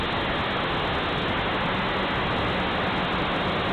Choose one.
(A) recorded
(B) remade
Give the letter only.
A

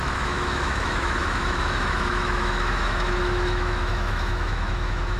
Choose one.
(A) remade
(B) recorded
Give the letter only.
A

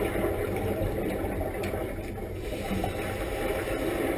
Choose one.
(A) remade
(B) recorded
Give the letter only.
B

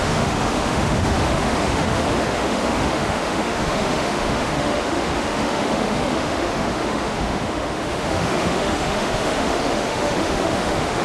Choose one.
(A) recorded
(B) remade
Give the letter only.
B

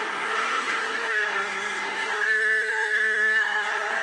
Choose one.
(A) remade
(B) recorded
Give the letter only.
A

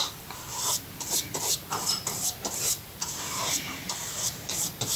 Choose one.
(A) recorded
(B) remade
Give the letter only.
A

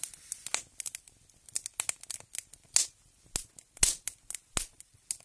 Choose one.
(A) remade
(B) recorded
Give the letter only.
B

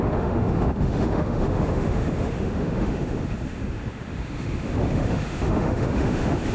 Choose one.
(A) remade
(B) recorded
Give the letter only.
A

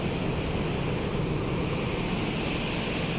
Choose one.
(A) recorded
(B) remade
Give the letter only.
A